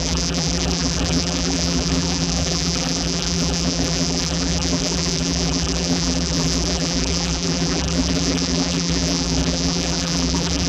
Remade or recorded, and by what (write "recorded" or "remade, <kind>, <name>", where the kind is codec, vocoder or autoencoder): remade, vocoder, BigVGAN v2